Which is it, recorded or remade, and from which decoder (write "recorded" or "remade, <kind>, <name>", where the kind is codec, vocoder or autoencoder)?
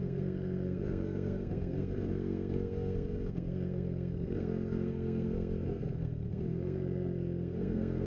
remade, codec, SNAC